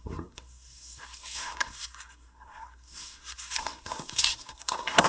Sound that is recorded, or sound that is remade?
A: remade